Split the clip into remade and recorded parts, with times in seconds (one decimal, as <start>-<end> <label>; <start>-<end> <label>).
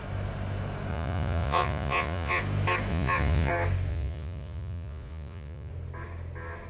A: 0.0-0.9 recorded; 0.9-2.4 remade; 2.4-2.9 recorded; 2.9-3.5 remade; 3.5-3.9 recorded; 3.9-5.7 remade; 5.7-6.7 recorded